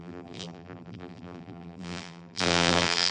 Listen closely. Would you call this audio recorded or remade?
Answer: remade